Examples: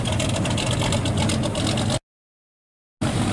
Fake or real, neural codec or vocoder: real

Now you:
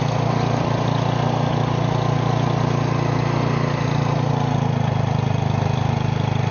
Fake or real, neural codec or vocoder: real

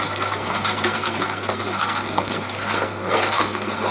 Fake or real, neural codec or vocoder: fake, codec, SNAC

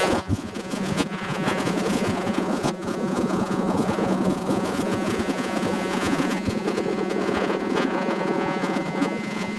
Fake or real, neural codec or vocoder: fake, vocoder, Vocos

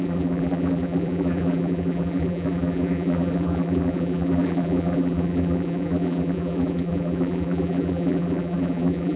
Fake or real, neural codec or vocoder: fake, vocoder, BigVGAN v2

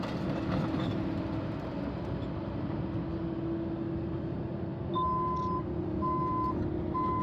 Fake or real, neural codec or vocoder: real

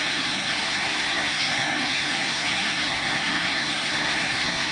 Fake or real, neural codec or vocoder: fake, codec, SNAC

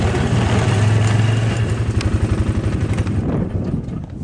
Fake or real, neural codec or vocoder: real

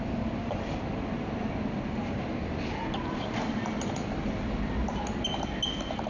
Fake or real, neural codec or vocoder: real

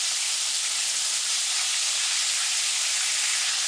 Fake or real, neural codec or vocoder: real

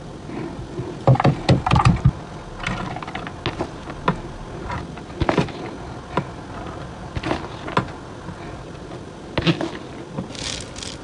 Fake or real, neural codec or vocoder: real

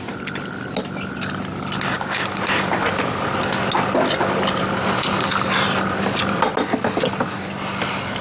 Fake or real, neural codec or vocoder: real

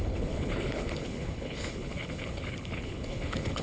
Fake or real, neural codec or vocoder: fake, codec, HILCodec